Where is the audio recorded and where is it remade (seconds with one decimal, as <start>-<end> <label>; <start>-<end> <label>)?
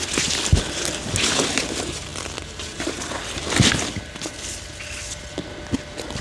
0.0-6.2 recorded